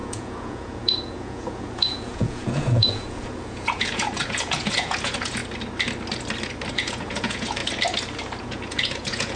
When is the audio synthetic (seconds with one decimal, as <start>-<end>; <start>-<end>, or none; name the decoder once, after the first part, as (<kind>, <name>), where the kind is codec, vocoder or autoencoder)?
0.0-5.4 (vocoder, Vocos); 6.7-7.6; 8.4-9.4